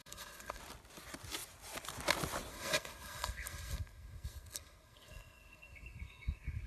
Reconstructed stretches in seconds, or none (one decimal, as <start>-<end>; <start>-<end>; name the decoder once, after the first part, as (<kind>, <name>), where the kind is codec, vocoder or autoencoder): 0.0-0.6 (codec, SNAC); 2.5-6.7